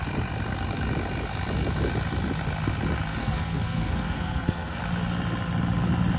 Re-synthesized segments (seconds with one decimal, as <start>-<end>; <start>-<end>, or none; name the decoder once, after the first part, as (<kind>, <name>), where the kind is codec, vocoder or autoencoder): 3.2-4.8 (codec, SNAC)